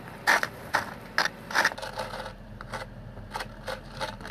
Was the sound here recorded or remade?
recorded